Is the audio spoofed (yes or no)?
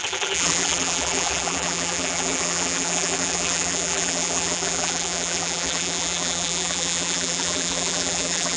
yes